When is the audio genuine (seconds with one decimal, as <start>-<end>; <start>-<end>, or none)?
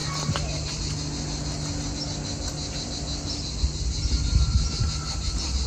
0.0-5.7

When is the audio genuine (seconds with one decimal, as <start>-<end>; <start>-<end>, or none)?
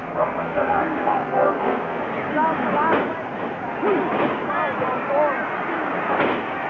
2.0-6.7